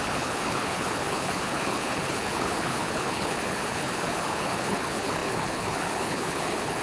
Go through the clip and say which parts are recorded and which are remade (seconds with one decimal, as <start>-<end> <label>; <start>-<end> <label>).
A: 0.0-6.8 remade